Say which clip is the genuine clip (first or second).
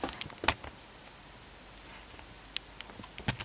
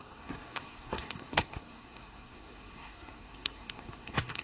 first